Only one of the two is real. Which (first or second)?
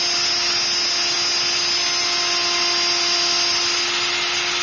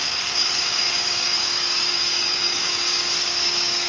first